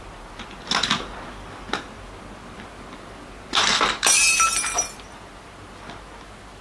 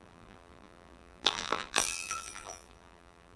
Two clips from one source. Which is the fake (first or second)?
second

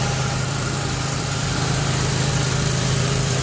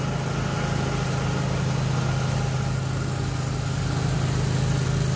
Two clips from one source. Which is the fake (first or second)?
first